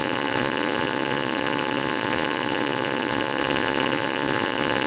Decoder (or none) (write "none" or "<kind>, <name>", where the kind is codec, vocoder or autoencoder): vocoder, Vocos